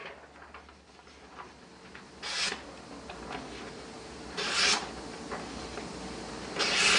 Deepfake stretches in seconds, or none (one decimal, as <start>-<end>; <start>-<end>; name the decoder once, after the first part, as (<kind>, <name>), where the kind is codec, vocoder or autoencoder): none